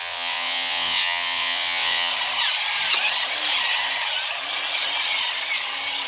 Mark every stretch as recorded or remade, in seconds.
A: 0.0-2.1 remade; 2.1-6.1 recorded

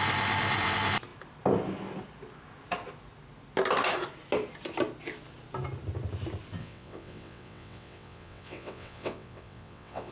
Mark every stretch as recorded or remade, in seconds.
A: 0.0-6.6 recorded; 6.6-10.1 remade

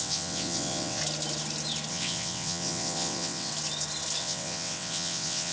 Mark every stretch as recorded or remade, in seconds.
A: 0.0-1.0 remade; 1.0-1.9 recorded; 1.9-3.5 remade; 3.5-4.2 recorded; 4.2-5.5 remade

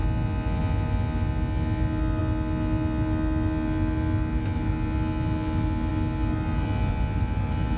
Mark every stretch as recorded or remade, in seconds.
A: 0.0-7.8 recorded

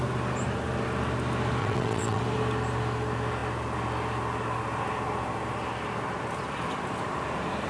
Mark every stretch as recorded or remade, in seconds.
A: 0.0-1.6 recorded; 1.6-2.2 remade; 2.2-7.7 recorded

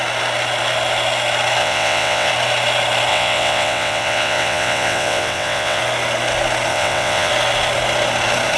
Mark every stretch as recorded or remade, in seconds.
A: 0.0-1.6 recorded; 1.6-2.3 remade; 2.3-3.1 recorded; 3.1-5.8 remade; 5.8-6.7 recorded; 6.7-7.3 remade; 7.3-8.6 recorded